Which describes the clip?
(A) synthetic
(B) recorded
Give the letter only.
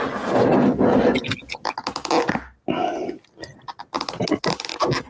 B